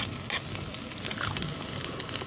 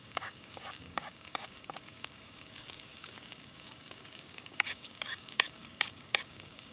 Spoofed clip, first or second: second